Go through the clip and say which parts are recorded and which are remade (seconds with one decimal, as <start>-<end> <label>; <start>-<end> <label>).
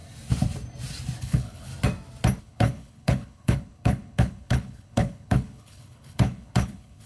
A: 0.0-1.2 recorded; 1.2-1.7 remade; 1.7-2.4 recorded; 2.4-7.1 remade